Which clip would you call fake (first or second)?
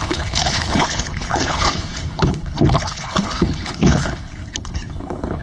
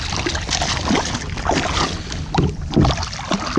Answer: first